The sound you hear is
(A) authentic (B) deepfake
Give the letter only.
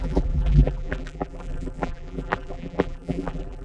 B